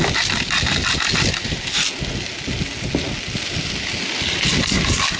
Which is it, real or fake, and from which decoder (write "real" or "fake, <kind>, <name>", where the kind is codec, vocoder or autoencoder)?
real